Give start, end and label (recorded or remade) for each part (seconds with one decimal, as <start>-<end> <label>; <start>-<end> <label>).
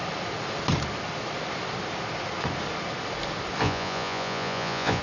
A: 0.0-3.6 recorded; 3.6-5.0 remade